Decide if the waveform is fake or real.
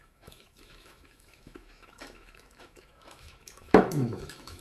fake